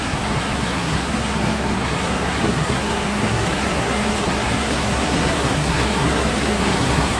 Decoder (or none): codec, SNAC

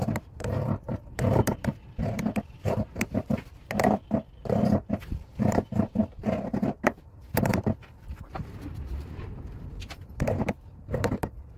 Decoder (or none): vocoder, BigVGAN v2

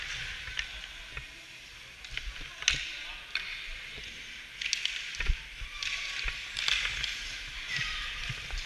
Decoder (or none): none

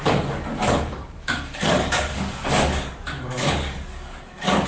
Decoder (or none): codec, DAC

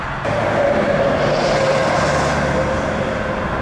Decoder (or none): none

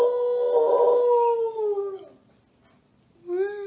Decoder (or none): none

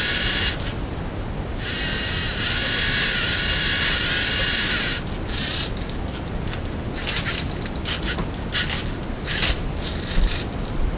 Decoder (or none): none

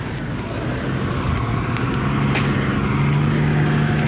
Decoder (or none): none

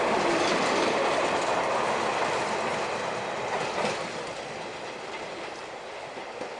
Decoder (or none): none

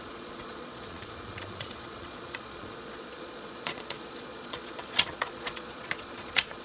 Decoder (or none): vocoder, Vocos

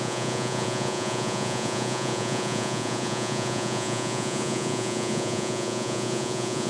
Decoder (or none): vocoder, Vocos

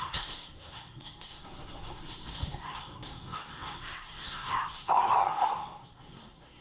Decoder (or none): codec, SNAC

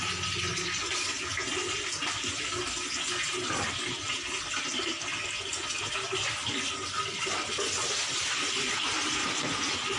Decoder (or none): none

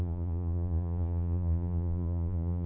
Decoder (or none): vocoder, Vocos